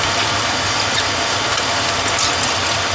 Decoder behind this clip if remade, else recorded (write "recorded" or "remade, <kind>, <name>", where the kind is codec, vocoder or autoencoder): recorded